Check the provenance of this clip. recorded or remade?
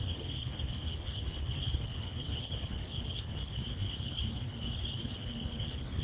remade